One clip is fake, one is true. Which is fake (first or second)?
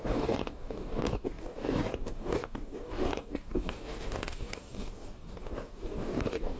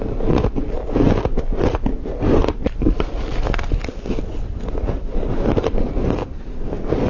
first